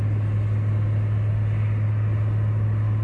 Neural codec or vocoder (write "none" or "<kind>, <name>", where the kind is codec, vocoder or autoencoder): none